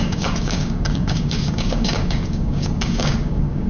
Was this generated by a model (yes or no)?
yes